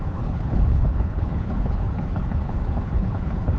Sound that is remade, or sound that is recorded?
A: remade